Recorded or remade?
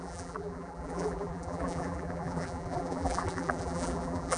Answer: remade